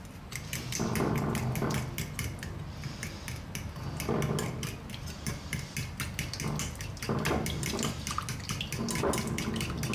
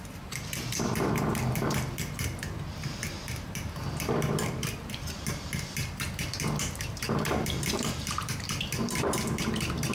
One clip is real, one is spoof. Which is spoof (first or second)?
second